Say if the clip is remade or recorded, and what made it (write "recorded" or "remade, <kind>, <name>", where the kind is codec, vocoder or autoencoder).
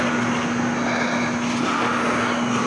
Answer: recorded